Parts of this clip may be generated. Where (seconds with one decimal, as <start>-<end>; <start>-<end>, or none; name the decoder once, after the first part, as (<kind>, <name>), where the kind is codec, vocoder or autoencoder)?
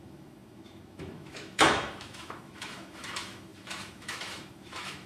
0.0-5.1 (autoencoder, DAC-VAE)